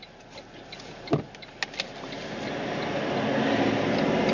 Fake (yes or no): no